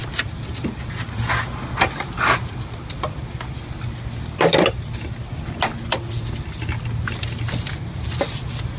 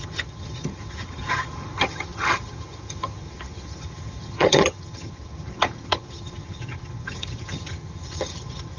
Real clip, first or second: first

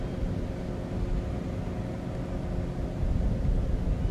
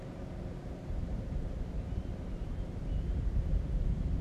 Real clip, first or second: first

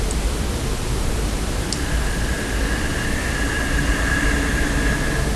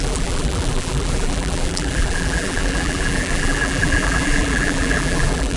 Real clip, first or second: first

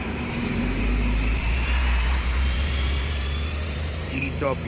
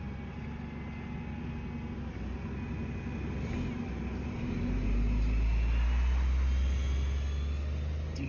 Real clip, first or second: second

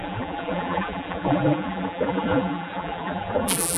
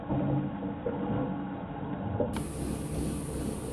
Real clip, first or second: second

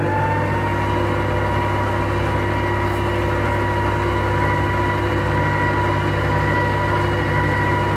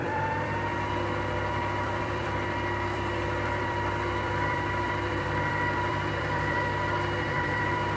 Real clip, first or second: first